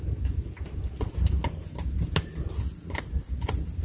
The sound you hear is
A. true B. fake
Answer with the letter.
A